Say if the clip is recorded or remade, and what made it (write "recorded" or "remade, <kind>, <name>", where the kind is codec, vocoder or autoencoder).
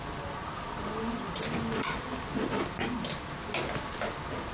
recorded